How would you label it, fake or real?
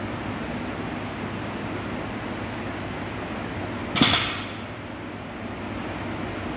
real